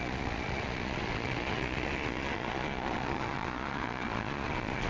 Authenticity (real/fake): fake